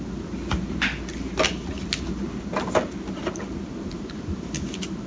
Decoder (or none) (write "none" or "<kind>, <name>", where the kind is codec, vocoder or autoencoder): none